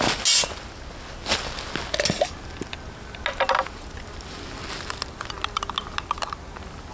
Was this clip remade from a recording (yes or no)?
no